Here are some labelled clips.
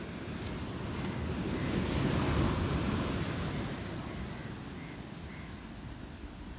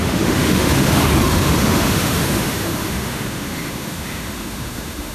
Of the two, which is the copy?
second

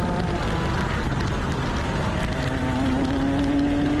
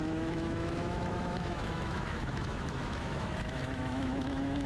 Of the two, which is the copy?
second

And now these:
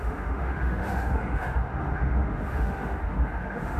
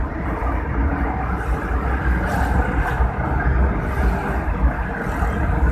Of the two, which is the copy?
first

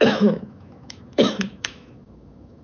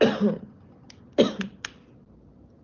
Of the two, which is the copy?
first